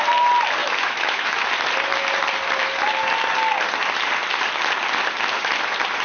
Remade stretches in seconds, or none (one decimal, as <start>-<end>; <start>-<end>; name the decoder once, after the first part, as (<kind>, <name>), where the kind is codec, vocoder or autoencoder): 0.6-1.5 (autoencoder, DAC-VAE)